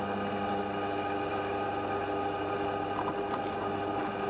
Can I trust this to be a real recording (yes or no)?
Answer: yes